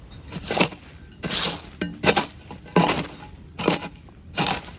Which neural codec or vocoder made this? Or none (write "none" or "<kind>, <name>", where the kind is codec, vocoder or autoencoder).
vocoder, BigVGAN v2